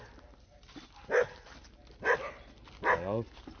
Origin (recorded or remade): recorded